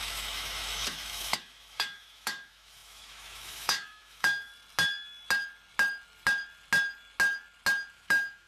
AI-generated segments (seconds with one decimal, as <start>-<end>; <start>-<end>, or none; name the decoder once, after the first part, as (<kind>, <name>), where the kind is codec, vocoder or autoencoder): 0.0-4.5 (autoencoder, DAC-VAE); 7.9-8.5